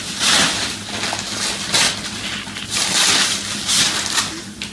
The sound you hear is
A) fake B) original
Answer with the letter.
B